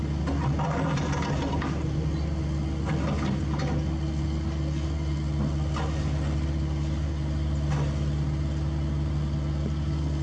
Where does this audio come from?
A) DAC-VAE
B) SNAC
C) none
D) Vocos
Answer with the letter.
C